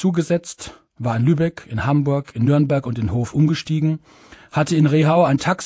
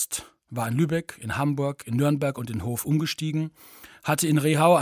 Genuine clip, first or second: second